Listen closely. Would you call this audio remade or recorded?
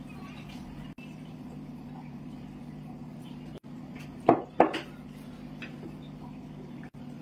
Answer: recorded